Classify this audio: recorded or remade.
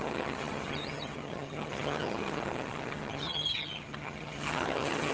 remade